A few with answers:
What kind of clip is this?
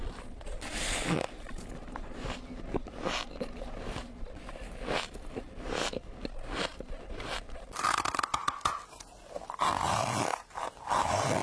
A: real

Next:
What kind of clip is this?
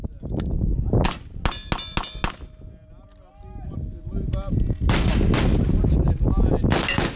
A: real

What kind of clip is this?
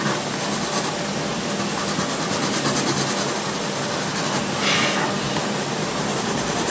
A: real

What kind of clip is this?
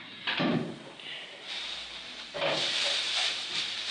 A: fake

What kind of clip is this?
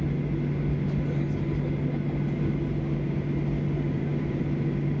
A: real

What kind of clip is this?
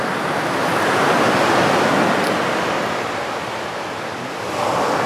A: real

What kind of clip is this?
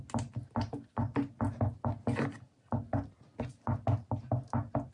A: real